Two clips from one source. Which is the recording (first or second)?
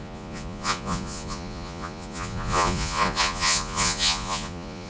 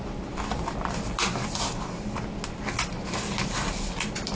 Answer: second